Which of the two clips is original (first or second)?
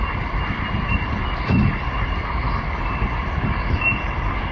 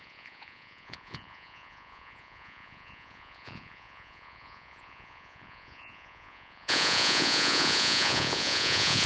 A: first